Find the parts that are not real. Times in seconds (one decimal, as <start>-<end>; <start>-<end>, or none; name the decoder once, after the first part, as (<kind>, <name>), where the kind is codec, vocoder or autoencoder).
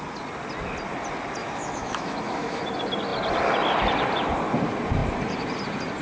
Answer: 1.4-2.6 (autoencoder, DAC-VAE)